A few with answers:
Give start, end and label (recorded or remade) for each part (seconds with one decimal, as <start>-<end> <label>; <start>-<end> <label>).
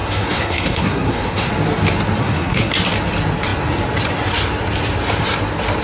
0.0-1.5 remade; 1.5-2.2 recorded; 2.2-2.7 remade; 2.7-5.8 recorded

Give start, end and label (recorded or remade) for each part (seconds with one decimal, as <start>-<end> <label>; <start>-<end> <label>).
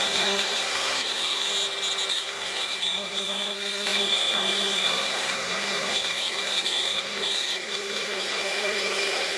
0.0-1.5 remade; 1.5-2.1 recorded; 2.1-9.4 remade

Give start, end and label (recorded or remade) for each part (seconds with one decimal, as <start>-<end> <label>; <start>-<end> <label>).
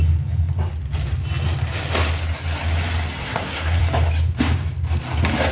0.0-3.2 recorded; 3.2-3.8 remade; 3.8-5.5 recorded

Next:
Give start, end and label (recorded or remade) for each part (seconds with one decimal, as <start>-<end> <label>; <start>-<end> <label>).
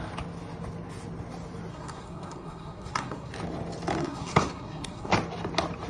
0.0-1.7 recorded; 1.7-3.3 remade; 3.3-4.0 recorded; 4.0-5.1 remade; 5.1-5.9 recorded